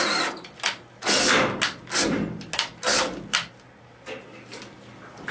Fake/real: real